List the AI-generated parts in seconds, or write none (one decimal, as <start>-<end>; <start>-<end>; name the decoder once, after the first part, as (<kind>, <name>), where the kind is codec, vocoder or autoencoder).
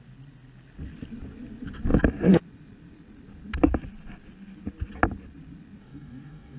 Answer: 5.8-6.6 (codec, DAC)